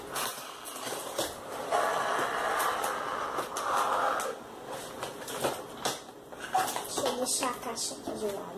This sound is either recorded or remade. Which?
recorded